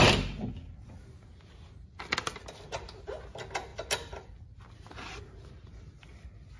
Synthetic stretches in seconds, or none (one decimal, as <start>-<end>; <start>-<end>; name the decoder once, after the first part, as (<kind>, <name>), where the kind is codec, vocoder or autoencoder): none